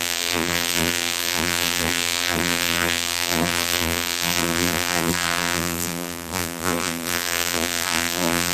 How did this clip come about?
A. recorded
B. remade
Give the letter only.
B